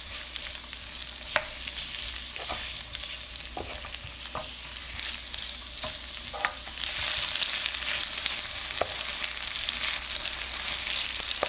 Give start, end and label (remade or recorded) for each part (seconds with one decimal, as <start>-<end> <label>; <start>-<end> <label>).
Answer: 0.0-11.5 recorded